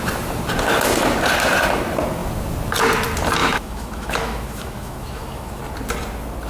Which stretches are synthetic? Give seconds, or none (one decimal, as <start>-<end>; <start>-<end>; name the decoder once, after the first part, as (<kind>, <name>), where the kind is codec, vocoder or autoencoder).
3.4-5.6 (autoencoder, DAC-VAE)